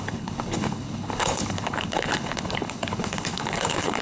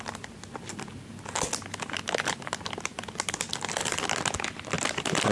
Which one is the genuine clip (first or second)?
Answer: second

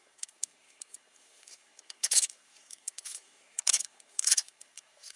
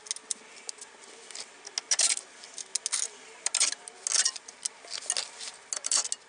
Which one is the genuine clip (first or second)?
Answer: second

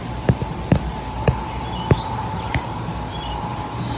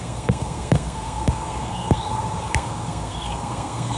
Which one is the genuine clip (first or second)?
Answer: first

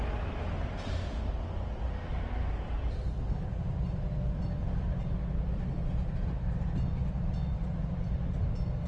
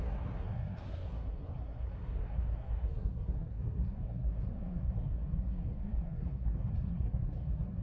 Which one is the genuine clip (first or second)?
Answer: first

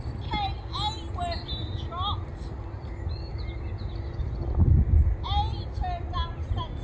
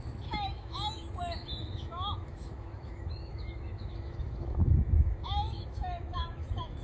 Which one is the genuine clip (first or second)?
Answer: first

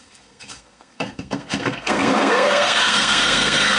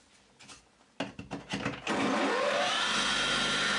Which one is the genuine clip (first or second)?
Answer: second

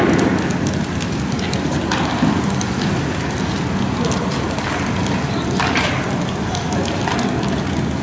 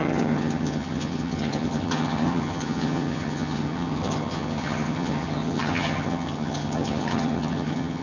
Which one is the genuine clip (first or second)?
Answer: first